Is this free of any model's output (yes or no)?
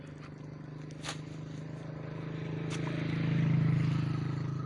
yes